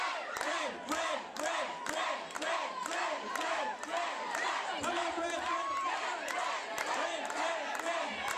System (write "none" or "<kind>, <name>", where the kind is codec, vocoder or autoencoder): vocoder, BigVGAN v2